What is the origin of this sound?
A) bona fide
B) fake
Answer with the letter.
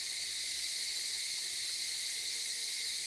A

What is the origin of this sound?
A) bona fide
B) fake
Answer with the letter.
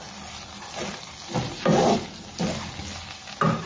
A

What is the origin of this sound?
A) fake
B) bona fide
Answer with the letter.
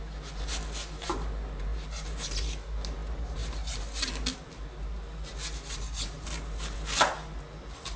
B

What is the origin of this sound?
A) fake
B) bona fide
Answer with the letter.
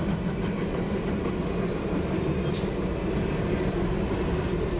B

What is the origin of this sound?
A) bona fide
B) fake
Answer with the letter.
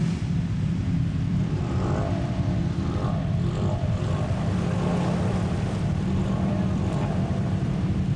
B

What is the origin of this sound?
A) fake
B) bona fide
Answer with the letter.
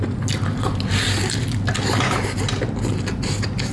B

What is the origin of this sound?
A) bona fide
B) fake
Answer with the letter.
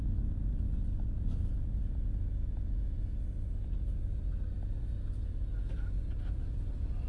A